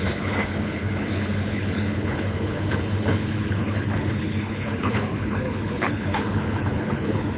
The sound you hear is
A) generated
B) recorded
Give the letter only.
A